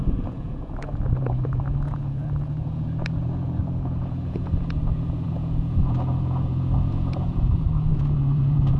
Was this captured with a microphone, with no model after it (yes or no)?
no